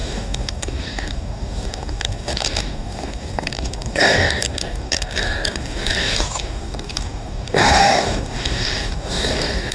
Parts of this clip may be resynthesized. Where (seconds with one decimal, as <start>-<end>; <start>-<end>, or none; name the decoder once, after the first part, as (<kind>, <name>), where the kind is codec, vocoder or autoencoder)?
0.0-9.7 (codec, DAC)